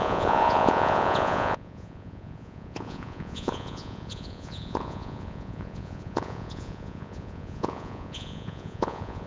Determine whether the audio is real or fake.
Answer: fake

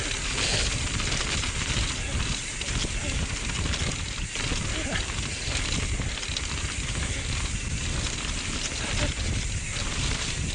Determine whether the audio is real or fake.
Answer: real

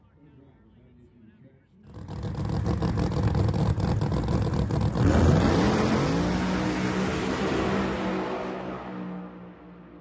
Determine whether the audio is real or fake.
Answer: real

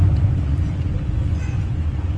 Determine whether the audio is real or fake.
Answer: fake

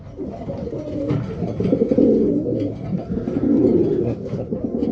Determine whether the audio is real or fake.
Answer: real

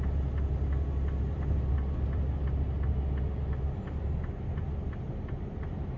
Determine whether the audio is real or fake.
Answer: real